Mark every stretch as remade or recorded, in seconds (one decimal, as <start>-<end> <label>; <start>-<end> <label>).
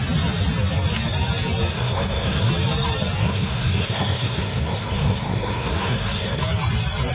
0.0-1.7 recorded; 1.7-2.5 remade; 2.5-3.2 recorded; 3.2-6.4 remade; 6.4-7.1 recorded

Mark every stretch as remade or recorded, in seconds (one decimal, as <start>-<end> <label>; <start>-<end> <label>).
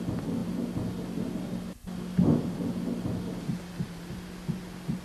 0.0-5.0 recorded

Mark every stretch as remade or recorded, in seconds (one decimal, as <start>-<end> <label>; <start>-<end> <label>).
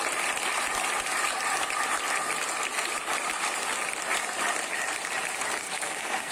0.0-5.6 recorded; 5.6-6.3 remade